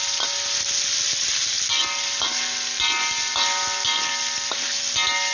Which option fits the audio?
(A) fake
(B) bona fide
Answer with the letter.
B